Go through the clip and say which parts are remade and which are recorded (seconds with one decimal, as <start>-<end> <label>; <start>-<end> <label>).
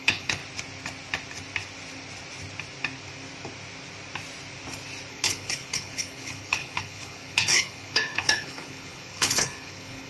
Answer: 0.0-0.4 remade; 0.4-5.1 recorded; 5.1-10.1 remade